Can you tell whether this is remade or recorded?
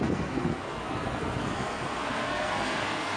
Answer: remade